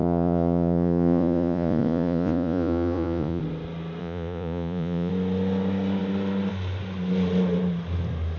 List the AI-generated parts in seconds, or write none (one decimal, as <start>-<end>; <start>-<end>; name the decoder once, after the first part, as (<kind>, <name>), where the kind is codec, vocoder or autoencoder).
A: 0.0-3.4 (vocoder, Vocos); 4.0-5.1

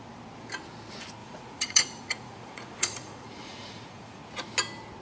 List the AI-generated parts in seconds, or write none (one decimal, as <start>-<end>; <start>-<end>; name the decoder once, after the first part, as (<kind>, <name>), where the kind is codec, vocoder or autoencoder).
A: 1.2-4.2 (vocoder, Vocos)